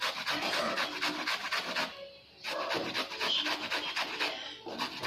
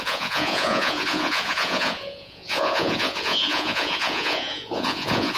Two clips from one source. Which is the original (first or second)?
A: first